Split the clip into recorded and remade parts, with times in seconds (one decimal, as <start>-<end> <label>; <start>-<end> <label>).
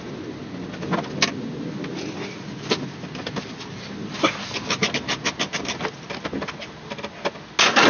0.0-7.9 recorded